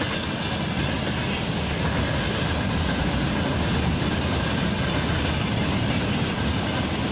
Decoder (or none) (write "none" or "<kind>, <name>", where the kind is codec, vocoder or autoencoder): none